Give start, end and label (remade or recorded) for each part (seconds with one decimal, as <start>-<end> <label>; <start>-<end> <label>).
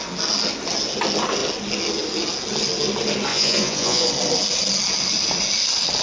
0.0-3.3 recorded; 3.3-4.1 remade; 4.1-6.0 recorded